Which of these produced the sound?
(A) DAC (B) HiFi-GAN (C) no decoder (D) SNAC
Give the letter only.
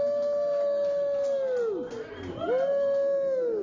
C